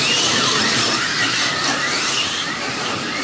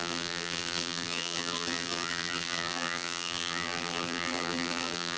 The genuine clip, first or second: first